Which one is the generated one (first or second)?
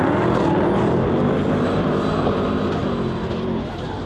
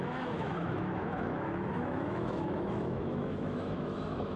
second